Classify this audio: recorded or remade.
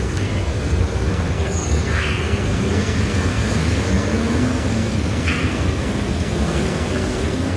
remade